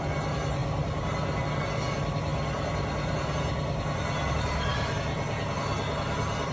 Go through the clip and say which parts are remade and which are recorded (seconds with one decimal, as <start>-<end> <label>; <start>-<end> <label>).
0.0-6.5 recorded